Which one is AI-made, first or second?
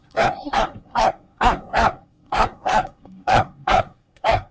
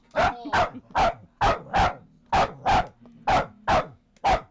first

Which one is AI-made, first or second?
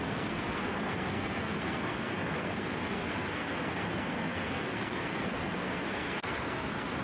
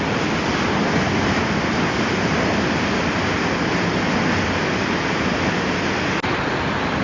first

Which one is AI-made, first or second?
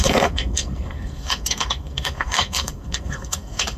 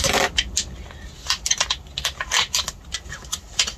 first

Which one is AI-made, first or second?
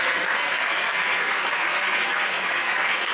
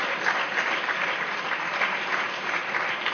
first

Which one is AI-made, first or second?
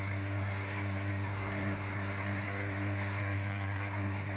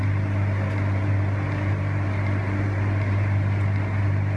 first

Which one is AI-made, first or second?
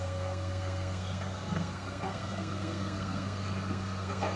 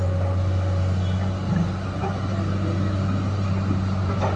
first